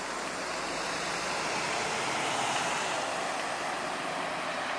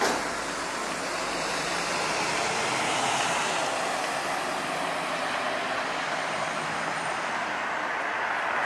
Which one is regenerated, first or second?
first